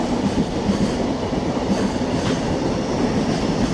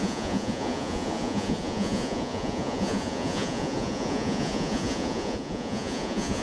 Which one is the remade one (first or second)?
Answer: second